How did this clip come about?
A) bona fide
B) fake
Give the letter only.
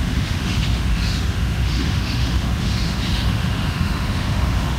B